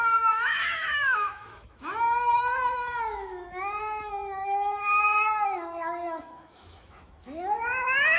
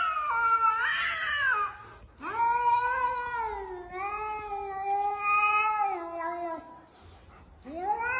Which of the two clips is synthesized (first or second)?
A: first